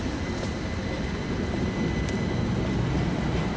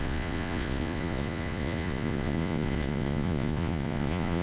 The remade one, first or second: second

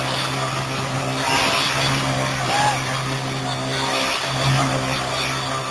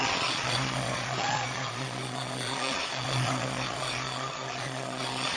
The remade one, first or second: second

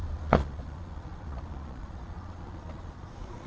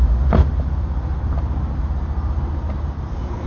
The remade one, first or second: first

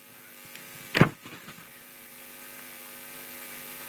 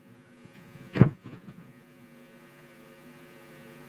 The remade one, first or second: second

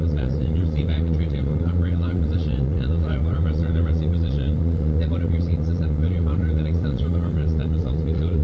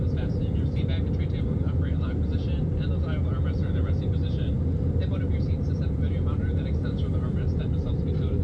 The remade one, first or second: first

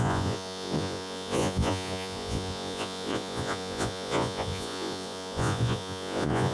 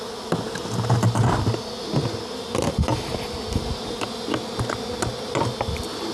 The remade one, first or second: first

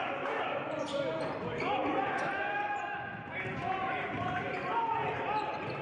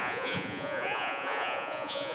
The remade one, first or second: second